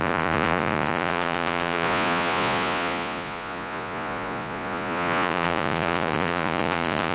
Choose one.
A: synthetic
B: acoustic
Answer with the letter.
A